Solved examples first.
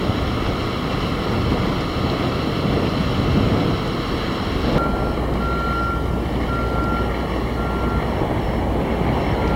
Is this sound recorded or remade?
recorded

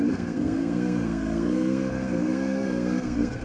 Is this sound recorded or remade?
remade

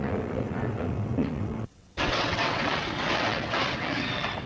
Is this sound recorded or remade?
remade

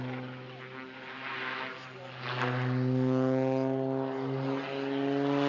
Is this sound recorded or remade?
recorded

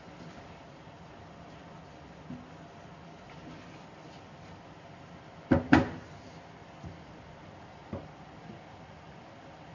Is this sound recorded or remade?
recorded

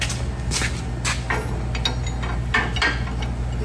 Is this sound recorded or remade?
recorded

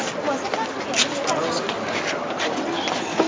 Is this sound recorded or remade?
recorded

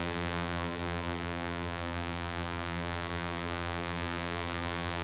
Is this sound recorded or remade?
remade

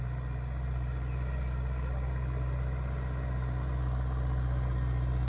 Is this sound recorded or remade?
recorded